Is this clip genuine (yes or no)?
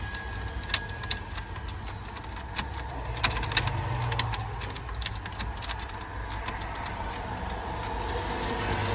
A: yes